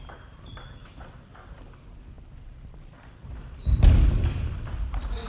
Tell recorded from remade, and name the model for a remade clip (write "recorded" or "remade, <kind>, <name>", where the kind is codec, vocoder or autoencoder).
recorded